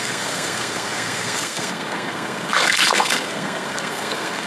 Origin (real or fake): fake